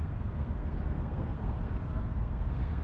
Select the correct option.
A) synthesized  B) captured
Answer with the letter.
A